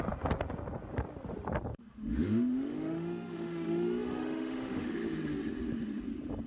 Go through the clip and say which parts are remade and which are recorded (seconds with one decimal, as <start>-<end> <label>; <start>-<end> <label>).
0.0-1.7 recorded; 1.7-4.9 remade; 4.9-6.5 recorded